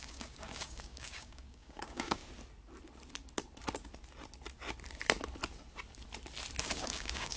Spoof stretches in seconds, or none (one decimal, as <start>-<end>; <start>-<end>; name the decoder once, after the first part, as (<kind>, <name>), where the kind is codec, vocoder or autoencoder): 0.0-2.2 (codec, DAC); 6.6-7.4